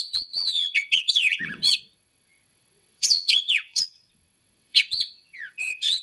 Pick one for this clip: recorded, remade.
remade